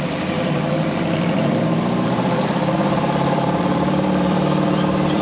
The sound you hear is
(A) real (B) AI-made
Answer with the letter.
B